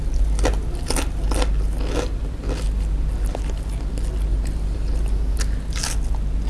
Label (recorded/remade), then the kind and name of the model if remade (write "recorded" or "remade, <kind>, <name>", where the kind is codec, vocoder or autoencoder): recorded